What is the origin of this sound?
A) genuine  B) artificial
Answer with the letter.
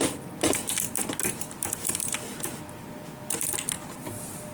A